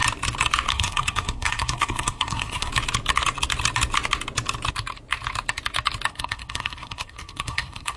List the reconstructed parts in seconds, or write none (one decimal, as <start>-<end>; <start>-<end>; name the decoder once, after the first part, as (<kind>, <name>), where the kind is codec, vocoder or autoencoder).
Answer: 0.7-2.7 (codec, SNAC); 6.1-8.0